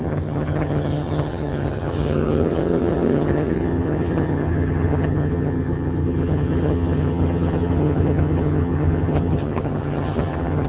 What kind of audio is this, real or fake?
fake